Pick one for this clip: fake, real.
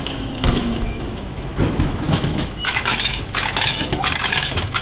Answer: fake